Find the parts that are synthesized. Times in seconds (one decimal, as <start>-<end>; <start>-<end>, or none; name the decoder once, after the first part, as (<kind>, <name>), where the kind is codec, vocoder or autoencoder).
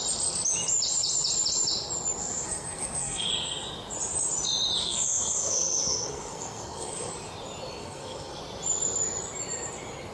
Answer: 2.2-3.3 (codec, SNAC); 4.8-7.1; 7.8-8.4